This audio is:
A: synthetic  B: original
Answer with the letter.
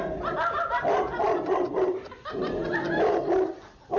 B